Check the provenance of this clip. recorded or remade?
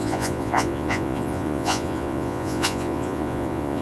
remade